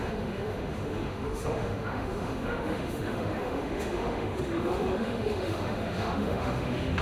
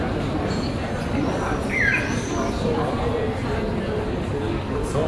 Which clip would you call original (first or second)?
second